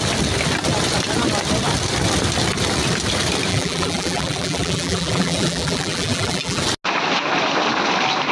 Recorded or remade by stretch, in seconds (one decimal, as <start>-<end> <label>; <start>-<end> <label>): 0.0-3.5 recorded; 3.5-6.6 remade; 6.6-8.3 recorded